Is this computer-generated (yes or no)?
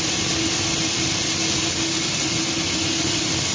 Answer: no